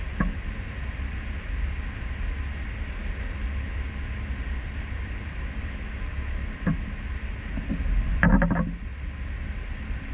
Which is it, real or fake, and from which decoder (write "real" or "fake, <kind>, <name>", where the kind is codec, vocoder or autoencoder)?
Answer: real